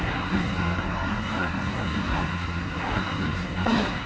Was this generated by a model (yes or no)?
yes